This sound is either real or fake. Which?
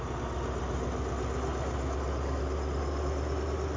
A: real